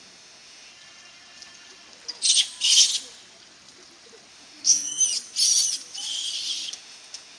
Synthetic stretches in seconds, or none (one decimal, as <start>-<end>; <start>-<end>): 0.0-0.7; 4.3-5.0; 6.7-7.4